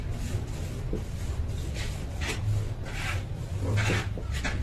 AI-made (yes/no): no